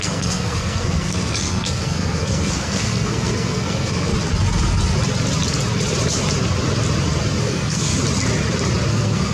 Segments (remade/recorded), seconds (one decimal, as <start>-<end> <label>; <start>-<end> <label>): 0.0-4.1 remade; 4.1-7.4 recorded; 7.4-7.9 remade; 7.9-8.9 recorded; 8.9-9.3 remade